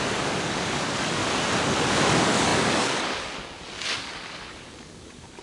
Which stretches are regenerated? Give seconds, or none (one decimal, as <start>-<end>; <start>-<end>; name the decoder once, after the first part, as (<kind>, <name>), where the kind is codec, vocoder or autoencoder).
0.0-1.2 (codec, DAC); 1.7-5.4